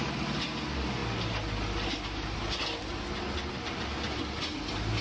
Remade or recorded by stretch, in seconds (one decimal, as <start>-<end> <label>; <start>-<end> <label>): 0.0-5.0 recorded